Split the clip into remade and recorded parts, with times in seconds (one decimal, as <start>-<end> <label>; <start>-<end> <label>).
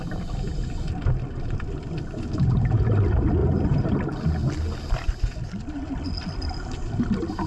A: 0.0-3.4 recorded; 3.4-4.0 remade; 4.0-7.5 recorded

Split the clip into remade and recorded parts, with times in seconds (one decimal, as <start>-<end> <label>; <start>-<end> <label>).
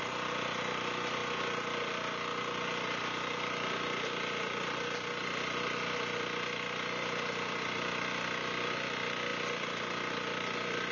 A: 0.0-10.9 recorded